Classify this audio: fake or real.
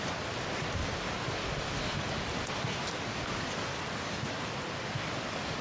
real